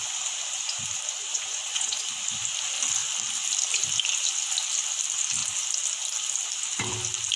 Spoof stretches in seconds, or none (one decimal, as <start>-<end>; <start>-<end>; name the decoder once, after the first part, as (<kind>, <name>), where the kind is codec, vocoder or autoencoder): 1.3-2.0 (vocoder, Vocos)